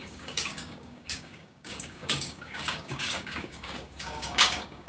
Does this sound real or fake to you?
fake